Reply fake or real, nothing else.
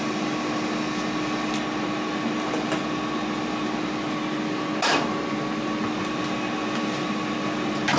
real